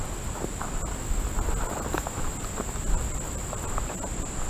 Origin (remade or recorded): recorded